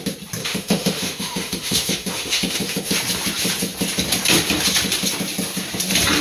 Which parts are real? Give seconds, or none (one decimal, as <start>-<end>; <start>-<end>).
0.0-0.4; 2.9-6.2